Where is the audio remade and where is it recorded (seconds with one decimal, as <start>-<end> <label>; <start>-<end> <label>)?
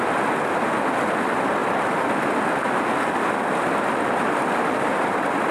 0.0-5.5 recorded